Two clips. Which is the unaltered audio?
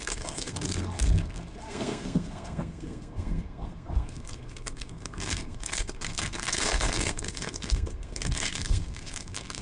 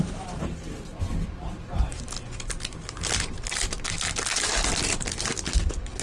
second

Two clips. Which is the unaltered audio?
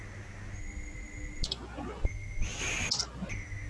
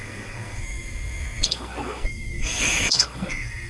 first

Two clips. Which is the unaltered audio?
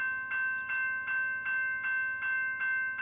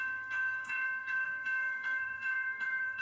first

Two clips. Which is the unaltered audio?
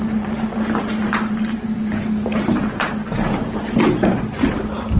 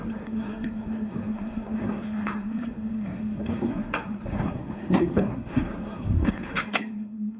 first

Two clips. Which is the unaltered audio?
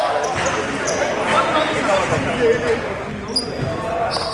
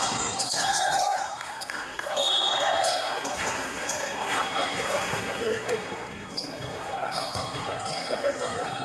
first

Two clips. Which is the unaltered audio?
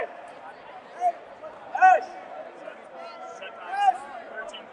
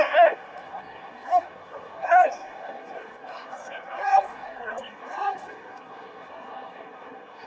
first